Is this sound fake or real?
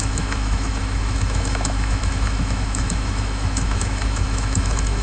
fake